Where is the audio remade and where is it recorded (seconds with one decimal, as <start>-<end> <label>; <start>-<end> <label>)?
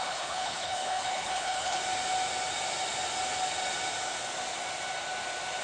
0.0-1.8 remade; 1.8-5.6 recorded